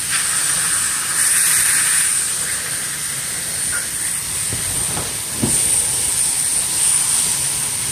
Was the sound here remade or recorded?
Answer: recorded